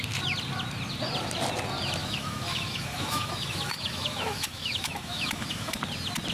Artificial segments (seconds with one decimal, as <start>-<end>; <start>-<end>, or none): 2.0-5.8